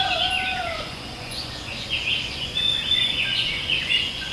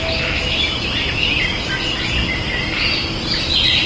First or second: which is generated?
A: first